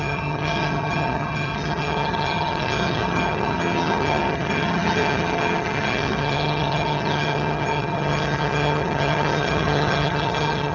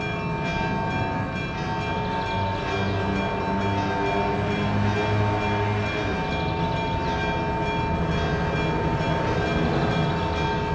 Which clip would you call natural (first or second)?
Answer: second